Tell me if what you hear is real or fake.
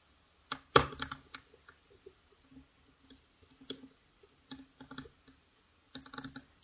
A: real